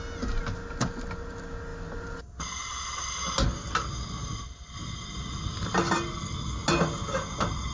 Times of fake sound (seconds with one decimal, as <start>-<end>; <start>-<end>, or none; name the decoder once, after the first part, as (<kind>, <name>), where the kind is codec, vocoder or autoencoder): none